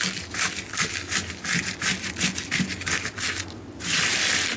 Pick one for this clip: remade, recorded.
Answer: recorded